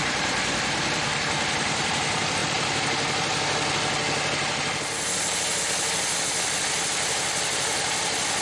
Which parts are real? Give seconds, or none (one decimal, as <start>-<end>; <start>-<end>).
2.4-5.6